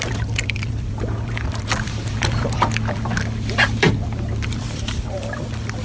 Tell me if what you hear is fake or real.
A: fake